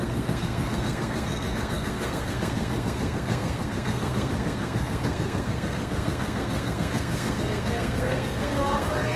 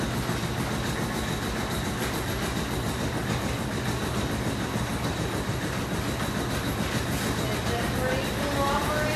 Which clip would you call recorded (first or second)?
second